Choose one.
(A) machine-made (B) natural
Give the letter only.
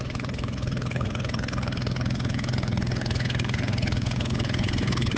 A